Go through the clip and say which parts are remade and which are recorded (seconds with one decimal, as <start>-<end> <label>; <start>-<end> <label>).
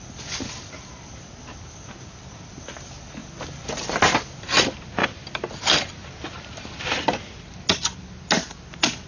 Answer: 0.0-9.1 recorded